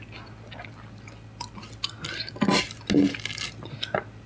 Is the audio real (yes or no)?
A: yes